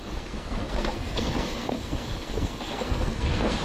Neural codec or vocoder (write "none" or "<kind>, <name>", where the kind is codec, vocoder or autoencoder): codec, SNAC